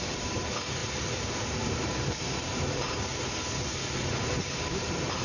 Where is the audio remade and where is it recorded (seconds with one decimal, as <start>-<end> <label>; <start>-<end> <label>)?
0.0-3.1 remade; 3.1-4.4 recorded; 4.4-5.2 remade